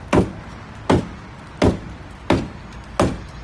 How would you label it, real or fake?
real